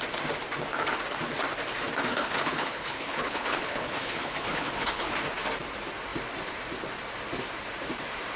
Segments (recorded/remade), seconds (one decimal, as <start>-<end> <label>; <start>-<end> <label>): 0.0-2.1 recorded; 2.1-5.1 remade; 5.1-8.4 recorded